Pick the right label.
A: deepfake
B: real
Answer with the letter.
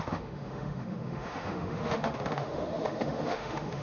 A